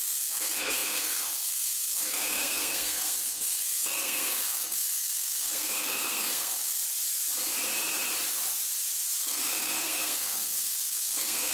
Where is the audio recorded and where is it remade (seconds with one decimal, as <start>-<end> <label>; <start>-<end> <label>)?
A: 0.0-6.8 remade; 6.8-9.2 recorded; 9.2-11.5 remade